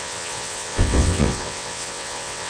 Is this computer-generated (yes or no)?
yes